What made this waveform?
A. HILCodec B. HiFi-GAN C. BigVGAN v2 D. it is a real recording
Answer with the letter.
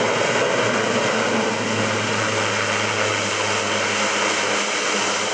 D